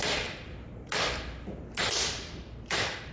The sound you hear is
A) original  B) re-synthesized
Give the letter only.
A